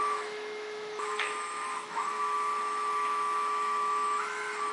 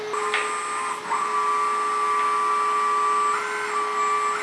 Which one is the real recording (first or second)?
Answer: second